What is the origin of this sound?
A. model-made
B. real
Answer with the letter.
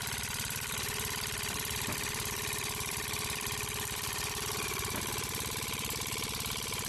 A